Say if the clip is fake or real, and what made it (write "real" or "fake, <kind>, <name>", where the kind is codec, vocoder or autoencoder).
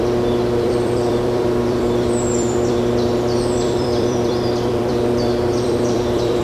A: fake, vocoder, BigVGAN v2